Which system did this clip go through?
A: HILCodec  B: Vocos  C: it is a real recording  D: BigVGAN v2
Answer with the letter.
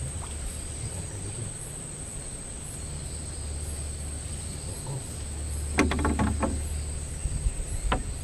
C